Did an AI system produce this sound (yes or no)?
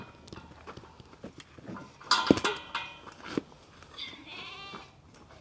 no